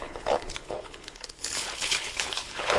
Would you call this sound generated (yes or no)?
yes